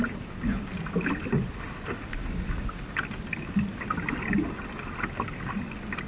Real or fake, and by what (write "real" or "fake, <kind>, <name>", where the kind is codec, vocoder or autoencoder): real